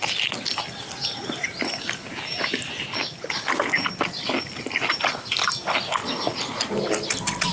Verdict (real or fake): real